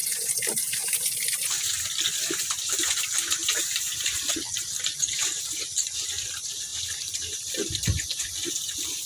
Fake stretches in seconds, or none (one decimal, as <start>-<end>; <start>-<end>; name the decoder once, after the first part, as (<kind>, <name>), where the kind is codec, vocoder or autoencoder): 0.0-1.0 (vocoder, BigVGAN v2); 3.4-4.3; 6.7-7.5